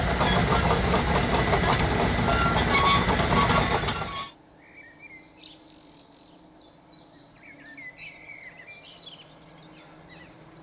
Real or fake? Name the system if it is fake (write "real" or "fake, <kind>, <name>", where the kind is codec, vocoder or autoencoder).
real